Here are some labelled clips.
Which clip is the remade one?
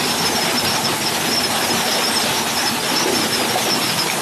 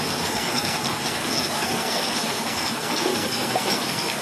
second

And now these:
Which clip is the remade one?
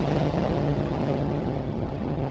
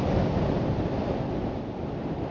first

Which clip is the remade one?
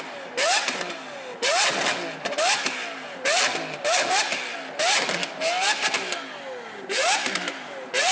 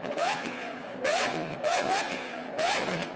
second